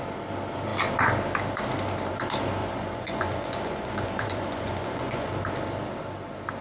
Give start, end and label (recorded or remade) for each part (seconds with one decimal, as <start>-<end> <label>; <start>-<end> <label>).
0.0-2.6 recorded; 2.6-5.3 remade; 5.3-6.6 recorded